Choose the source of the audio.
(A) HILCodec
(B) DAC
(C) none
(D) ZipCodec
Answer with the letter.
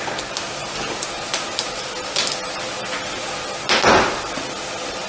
C